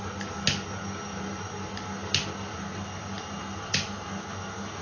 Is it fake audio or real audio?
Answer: real